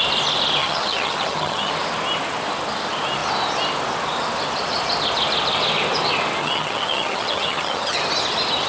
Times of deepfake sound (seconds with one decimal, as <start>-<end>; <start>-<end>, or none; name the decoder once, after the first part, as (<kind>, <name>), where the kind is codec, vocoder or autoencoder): 0.6-1.7 (vocoder, HiFi-GAN); 6.4-8.0